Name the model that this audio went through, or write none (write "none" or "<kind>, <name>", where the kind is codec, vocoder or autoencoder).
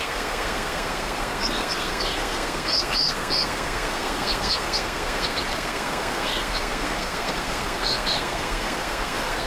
codec, SNAC